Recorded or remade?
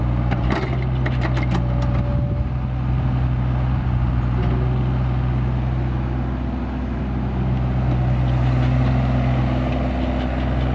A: recorded